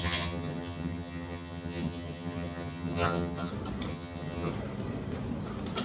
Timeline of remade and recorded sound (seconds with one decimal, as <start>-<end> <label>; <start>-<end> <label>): 0.0-3.5 remade; 3.5-3.9 recorded; 3.9-4.5 remade; 4.5-5.8 recorded